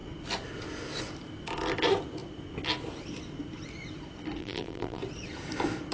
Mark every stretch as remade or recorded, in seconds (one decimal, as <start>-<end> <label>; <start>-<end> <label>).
0.0-4.4 recorded; 4.4-5.0 remade; 5.0-5.9 recorded